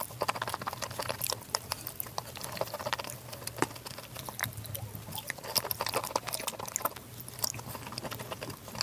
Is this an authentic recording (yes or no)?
yes